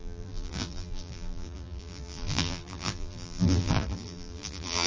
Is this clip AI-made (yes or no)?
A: yes